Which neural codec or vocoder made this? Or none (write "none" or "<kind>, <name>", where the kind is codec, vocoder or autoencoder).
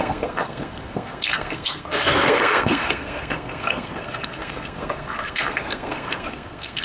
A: codec, SNAC